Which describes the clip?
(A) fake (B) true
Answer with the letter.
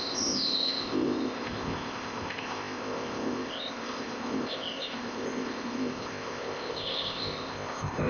A